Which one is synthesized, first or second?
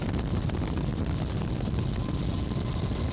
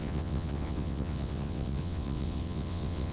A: second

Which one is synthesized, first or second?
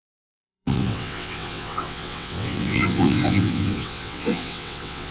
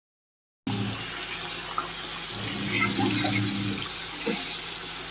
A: first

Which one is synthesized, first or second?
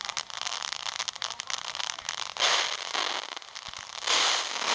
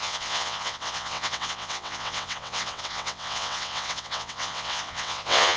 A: second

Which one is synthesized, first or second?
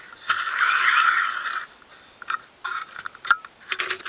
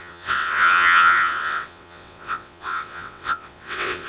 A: second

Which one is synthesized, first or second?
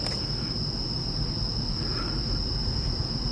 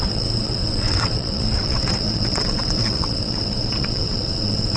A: second